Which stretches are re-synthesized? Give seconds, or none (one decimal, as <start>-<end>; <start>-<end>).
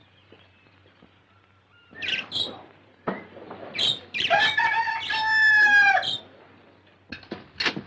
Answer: 0.0-4.4